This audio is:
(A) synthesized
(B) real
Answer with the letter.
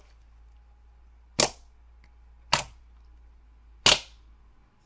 B